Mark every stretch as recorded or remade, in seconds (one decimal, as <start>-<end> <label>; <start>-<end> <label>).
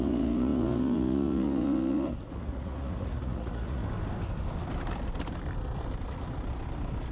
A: 0.0-3.8 remade; 3.8-7.1 recorded